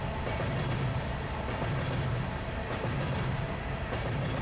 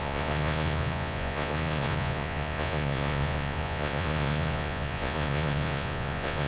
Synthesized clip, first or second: second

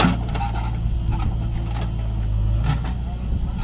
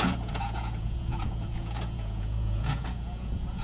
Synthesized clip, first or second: second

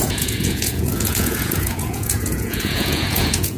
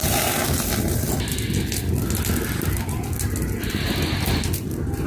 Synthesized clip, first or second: first